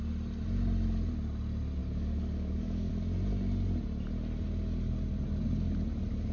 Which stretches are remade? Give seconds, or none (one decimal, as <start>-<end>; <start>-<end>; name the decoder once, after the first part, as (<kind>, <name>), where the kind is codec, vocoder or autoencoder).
1.8-2.9 (codec, DAC)

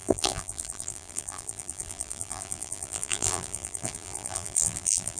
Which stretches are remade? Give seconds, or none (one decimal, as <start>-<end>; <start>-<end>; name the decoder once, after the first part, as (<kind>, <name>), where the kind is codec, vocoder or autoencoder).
0.0-5.2 (vocoder, BigVGAN v2)

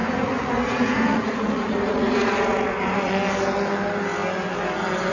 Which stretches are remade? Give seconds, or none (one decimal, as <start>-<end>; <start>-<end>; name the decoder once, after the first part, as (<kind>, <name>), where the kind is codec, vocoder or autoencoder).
0.0-3.1 (vocoder, Vocos)